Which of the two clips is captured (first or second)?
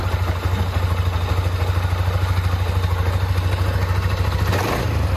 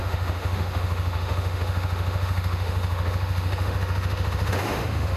first